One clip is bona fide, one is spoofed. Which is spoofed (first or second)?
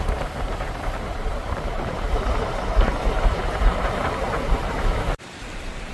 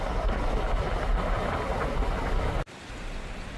first